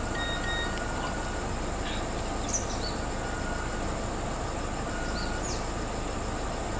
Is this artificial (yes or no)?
no